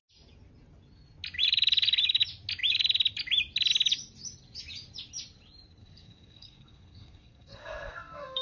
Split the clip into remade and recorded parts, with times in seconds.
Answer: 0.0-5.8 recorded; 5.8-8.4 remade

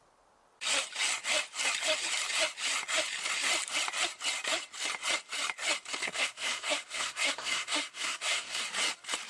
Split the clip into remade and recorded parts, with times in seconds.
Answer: 0.0-6.0 recorded; 6.0-8.6 remade; 8.6-9.3 recorded

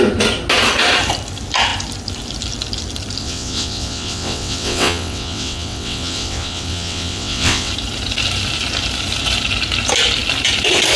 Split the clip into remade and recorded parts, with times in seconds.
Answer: 0.0-3.2 recorded; 3.2-7.7 remade; 7.7-11.0 recorded

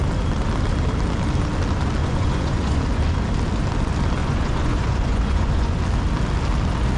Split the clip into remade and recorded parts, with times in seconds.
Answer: 0.0-2.0 recorded; 2.0-2.8 remade; 2.8-4.2 recorded; 4.2-5.8 remade; 5.8-7.0 recorded

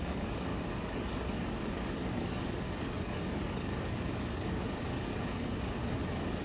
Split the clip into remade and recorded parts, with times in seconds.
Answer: 0.0-5.1 remade; 5.1-6.4 recorded

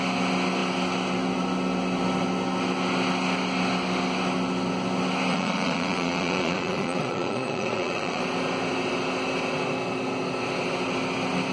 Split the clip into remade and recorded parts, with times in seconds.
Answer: 0.0-5.3 recorded; 5.3-8.2 remade; 8.2-11.5 recorded